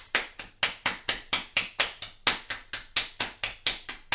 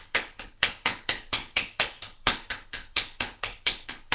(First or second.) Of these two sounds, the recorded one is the first